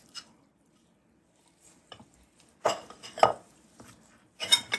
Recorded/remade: recorded